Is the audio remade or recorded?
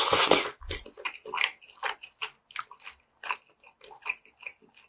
recorded